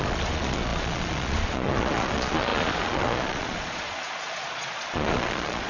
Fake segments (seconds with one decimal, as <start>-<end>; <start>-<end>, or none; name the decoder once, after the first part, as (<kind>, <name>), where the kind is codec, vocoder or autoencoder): 0.0-5.7 (vocoder, Vocos)